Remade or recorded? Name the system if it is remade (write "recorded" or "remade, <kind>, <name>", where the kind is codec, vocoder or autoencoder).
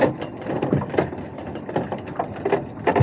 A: recorded